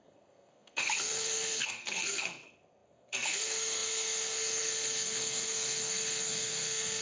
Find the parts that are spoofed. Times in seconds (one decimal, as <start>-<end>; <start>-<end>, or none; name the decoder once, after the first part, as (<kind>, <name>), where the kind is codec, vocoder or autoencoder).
0.0-7.0 (codec, SNAC)